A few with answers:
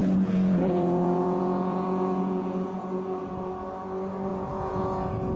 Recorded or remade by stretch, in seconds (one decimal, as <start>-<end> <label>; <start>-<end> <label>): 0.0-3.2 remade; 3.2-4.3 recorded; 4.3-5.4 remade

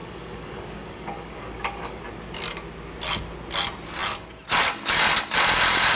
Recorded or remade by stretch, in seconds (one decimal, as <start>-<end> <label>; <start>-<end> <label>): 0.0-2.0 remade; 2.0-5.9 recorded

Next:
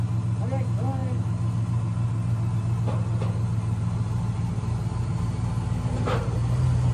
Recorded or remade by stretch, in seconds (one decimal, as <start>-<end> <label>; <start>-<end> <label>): 0.0-6.9 recorded